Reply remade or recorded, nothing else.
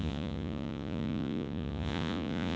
remade